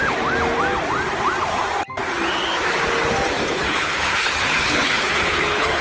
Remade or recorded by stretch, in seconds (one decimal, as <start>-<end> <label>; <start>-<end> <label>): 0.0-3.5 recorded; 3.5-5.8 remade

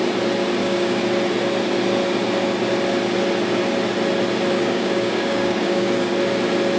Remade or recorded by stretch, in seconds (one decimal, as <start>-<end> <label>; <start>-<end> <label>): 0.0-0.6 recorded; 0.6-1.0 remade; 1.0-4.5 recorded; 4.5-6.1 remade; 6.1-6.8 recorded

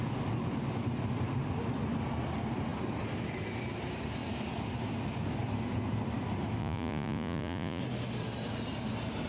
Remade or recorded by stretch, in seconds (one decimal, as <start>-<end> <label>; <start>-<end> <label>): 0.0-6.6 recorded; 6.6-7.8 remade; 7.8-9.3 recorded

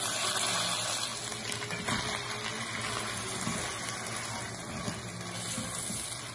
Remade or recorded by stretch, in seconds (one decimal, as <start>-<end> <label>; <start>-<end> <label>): 0.0-6.3 recorded